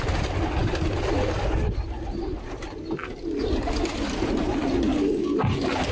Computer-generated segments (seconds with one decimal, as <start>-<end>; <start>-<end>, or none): 4.9-5.4